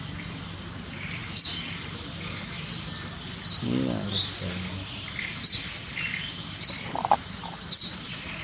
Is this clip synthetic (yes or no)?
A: no